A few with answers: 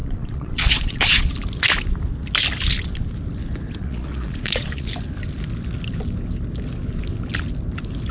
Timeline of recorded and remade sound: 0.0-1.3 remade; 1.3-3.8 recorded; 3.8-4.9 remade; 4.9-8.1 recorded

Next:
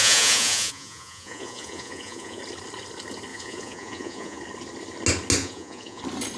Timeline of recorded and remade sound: 0.0-2.4 remade; 2.4-3.3 recorded; 3.3-4.4 remade; 4.4-5.4 recorded; 5.4-6.0 remade; 6.0-6.4 recorded

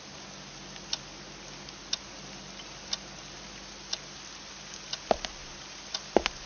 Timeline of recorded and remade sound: 0.0-6.5 recorded

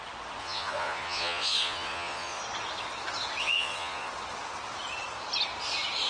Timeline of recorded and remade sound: 0.0-0.4 recorded; 0.4-2.4 remade; 2.4-3.4 recorded; 3.4-4.1 remade; 4.1-6.1 recorded

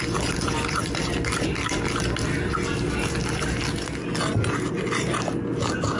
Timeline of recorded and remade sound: 0.0-6.0 recorded

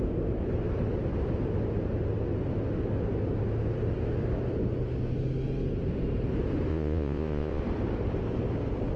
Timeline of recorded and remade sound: 0.0-6.7 recorded; 6.7-7.6 remade; 7.6-9.0 recorded